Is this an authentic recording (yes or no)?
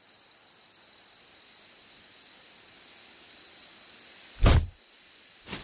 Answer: yes